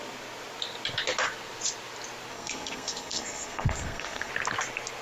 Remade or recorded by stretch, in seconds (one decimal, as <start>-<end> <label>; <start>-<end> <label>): 0.0-2.3 recorded; 2.3-4.3 remade; 4.3-5.0 recorded